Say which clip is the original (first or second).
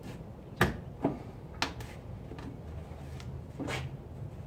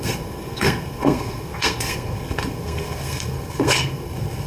first